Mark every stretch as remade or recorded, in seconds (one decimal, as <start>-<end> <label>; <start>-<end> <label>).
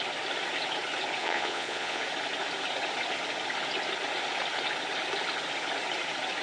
0.0-1.2 recorded; 1.2-2.0 remade; 2.0-6.4 recorded